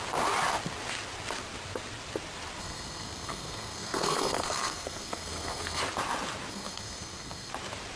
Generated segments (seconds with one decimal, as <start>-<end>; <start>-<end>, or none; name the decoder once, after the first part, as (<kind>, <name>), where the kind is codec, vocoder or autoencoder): 2.6-5.8 (codec, SNAC); 6.5-7.5